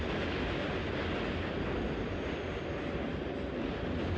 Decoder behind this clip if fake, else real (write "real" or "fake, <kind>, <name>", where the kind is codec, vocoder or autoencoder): real